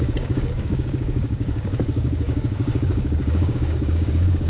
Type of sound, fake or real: fake